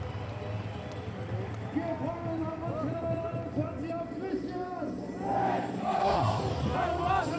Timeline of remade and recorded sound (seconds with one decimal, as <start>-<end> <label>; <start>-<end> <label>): 0.0-5.8 recorded; 5.8-6.4 remade; 6.4-7.4 recorded